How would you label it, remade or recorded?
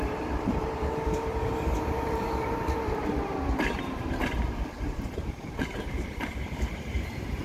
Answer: remade